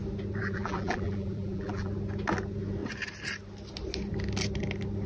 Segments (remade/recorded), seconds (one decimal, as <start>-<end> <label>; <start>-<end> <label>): 0.0-0.4 recorded; 0.4-1.9 remade; 1.9-5.1 recorded